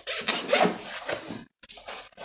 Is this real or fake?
real